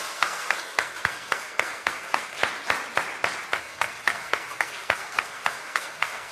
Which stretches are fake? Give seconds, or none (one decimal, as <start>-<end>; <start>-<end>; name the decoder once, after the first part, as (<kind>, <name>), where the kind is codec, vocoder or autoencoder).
0.0-2.4 (codec, SNAC); 3.6-6.3